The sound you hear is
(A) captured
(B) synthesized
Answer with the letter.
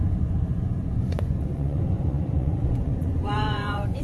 B